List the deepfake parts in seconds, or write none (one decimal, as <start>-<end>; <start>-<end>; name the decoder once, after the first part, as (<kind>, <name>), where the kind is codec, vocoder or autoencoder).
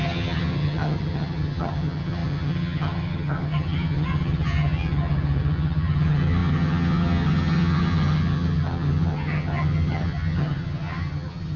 0.0-11.6 (vocoder, HiFi-GAN)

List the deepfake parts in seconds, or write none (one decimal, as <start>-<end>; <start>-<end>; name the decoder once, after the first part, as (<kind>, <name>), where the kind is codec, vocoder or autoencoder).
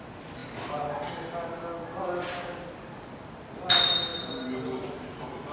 none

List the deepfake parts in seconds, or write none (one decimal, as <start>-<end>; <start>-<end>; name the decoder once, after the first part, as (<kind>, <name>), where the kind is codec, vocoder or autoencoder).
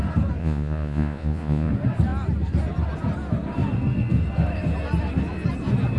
0.4-1.7 (vocoder, Vocos)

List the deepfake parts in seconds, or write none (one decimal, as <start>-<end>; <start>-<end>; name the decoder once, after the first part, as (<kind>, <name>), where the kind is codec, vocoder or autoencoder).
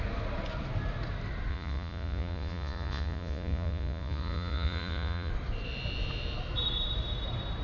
1.5-5.3 (vocoder, Vocos)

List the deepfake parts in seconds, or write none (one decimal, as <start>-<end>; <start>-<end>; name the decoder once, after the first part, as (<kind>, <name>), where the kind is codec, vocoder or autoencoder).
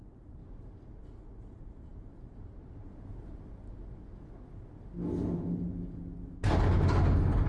none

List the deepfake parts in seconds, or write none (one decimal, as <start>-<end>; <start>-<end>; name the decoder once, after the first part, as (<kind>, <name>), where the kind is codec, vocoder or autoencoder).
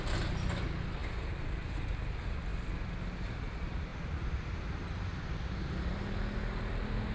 none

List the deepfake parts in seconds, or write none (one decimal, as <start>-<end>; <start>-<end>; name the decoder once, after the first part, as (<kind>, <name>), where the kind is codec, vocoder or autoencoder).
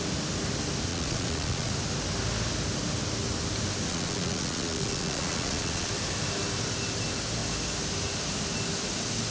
0.9-1.7 (vocoder, Vocos); 3.9-5.9